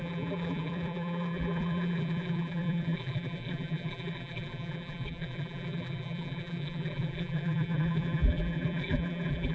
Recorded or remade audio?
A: remade